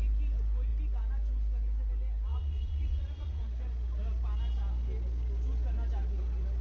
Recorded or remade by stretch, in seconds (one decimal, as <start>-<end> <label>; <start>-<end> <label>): 0.0-2.3 recorded; 2.3-3.4 remade; 3.4-6.6 recorded